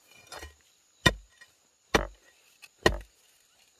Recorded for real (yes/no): yes